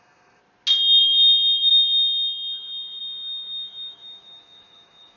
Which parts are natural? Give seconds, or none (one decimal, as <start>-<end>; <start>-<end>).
0.4-1.0